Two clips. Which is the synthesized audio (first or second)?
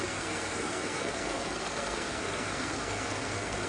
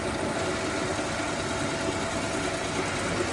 first